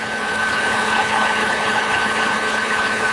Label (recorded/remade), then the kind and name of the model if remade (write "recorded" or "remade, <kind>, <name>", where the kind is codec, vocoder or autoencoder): remade, codec, HILCodec